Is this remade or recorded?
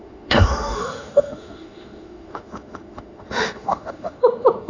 remade